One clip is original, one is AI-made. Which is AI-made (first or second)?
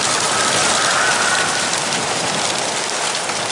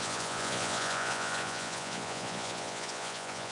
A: second